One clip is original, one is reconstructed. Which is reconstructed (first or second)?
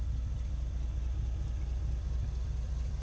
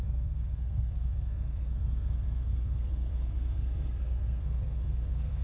second